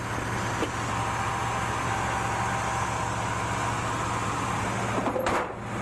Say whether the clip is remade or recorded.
recorded